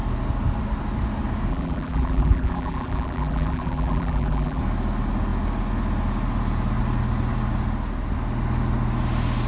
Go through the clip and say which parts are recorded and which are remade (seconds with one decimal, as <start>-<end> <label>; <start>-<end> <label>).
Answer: 0.0-1.5 recorded; 1.5-4.6 remade; 4.6-9.5 recorded